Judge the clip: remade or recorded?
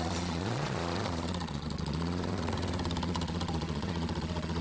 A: remade